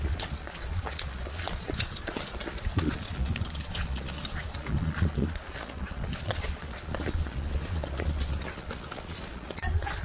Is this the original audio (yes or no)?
no